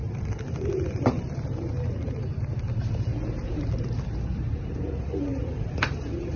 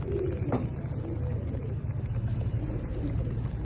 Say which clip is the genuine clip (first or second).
second